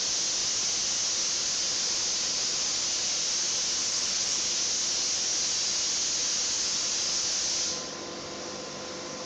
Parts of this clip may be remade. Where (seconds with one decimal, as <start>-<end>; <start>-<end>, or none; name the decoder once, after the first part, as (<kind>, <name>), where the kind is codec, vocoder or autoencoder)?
3.8-4.4 (codec, HILCodec)